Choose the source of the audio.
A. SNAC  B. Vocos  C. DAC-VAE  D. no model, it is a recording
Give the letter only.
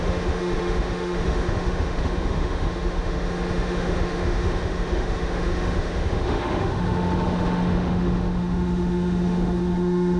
C